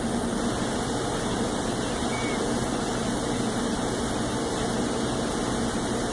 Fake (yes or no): no